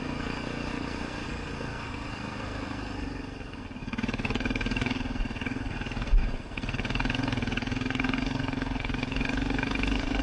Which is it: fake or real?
fake